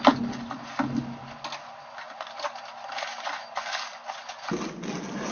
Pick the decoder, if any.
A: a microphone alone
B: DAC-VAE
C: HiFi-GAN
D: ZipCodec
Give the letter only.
A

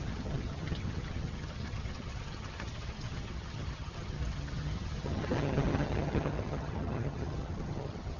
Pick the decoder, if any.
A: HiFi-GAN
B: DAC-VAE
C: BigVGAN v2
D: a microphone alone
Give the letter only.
A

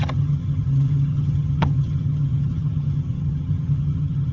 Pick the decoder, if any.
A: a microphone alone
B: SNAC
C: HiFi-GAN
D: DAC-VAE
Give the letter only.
C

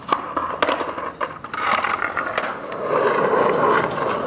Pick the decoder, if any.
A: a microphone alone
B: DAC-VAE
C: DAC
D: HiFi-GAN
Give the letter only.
A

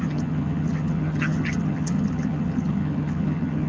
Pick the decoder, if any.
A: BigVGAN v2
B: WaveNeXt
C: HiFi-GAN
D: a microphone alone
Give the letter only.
C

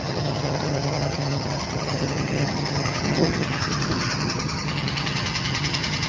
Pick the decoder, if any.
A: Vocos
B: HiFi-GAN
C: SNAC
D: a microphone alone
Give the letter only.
B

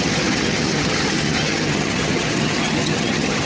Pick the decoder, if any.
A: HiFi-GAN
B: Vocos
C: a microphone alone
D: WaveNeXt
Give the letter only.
A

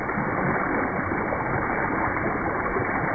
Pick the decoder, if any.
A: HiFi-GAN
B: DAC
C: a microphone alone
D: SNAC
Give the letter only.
C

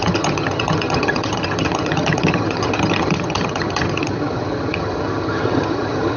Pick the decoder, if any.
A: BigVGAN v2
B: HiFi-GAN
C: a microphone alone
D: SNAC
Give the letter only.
B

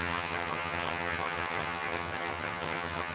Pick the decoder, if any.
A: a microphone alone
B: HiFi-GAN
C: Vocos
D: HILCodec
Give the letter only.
B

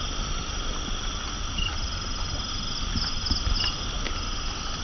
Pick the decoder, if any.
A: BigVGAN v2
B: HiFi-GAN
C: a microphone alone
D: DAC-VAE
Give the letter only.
C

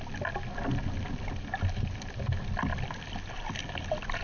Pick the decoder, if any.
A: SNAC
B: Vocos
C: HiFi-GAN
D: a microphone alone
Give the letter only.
D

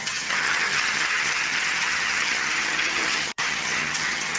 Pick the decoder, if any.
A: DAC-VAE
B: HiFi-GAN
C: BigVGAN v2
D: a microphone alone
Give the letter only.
B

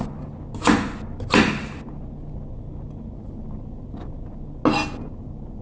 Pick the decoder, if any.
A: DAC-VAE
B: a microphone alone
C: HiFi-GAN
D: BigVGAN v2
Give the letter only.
B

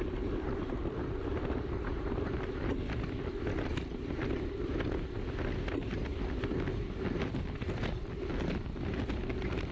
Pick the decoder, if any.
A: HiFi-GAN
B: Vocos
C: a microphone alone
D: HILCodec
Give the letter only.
C